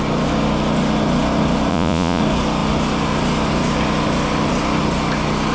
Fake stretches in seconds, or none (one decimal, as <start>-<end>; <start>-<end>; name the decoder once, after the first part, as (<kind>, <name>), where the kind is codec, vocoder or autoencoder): 1.7-2.2 (vocoder, Vocos)